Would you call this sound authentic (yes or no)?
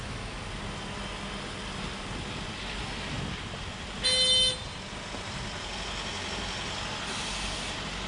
yes